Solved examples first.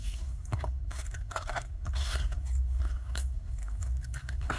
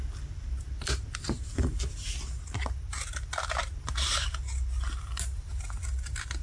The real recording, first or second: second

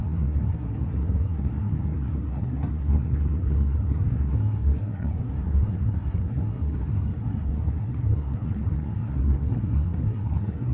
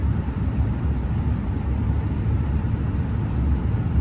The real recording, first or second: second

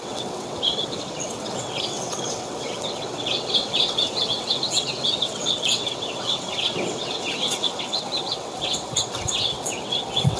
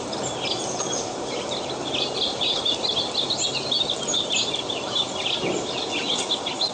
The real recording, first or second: second